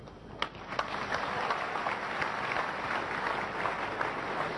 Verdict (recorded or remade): recorded